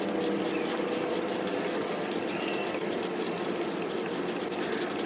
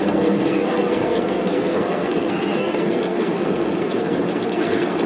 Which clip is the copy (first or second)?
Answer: second